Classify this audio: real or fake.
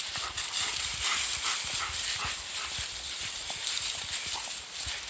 real